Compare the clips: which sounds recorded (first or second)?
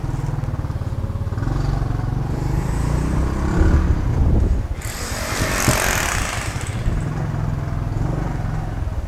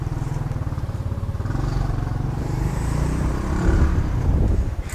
first